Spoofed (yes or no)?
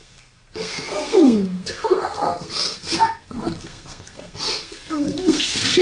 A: yes